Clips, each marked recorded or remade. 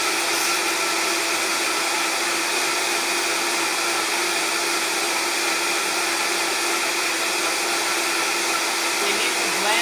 recorded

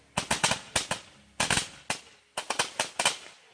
recorded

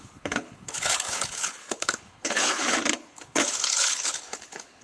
remade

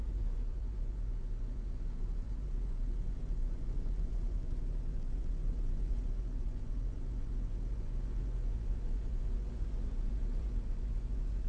remade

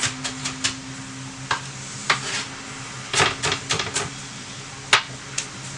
recorded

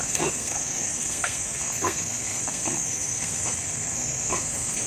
remade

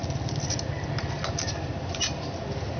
recorded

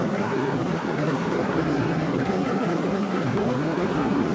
remade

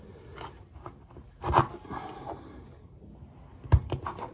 recorded